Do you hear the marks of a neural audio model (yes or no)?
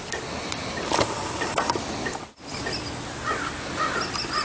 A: no